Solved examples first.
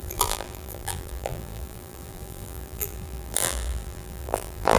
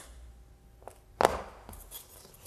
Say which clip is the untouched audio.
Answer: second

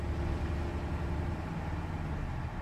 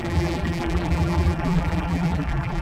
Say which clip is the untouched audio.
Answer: first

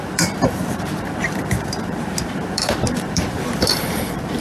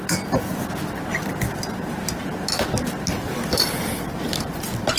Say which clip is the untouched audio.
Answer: second